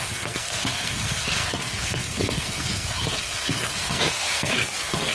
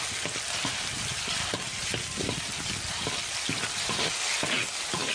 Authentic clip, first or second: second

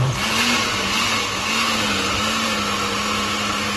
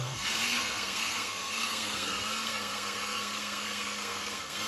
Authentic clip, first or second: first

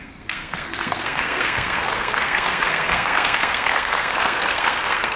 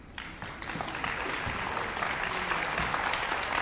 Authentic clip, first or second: second